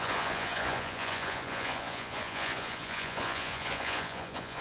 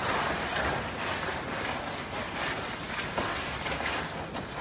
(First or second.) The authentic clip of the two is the second